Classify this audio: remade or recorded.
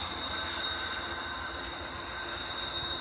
recorded